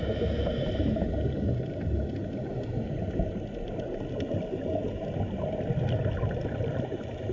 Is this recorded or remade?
recorded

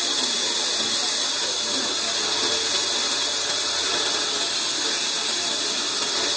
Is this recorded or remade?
recorded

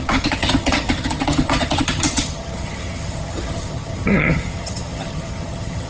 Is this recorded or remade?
remade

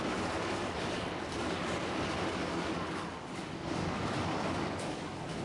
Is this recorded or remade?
remade